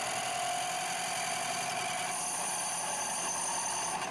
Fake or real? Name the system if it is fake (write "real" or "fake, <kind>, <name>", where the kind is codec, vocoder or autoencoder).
real